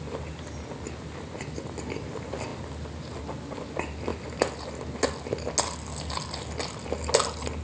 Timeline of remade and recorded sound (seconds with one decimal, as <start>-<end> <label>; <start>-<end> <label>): 0.0-7.6 recorded